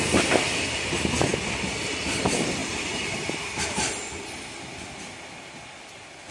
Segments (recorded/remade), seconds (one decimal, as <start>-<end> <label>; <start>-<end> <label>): 0.0-2.6 recorded; 2.6-3.8 remade; 3.8-6.3 recorded